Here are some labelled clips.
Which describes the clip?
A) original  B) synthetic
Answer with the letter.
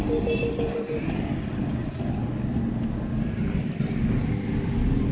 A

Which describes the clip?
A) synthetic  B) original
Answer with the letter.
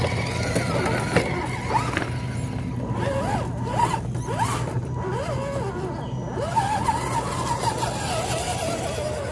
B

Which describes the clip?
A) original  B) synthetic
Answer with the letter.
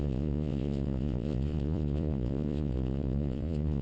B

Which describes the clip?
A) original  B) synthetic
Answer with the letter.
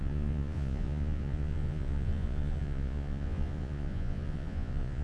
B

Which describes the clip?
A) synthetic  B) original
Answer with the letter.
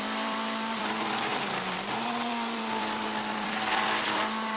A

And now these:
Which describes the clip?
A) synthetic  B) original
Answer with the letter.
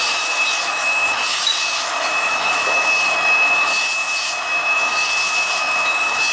A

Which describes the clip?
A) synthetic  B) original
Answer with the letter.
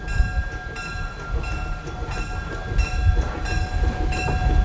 B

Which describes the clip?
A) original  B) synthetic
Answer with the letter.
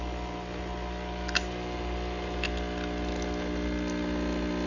A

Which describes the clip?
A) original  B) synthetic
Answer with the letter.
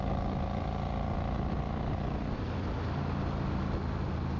A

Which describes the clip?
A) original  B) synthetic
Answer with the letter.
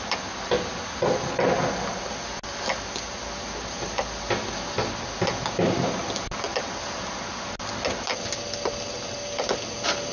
A